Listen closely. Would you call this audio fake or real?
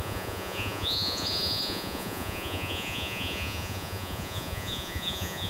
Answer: fake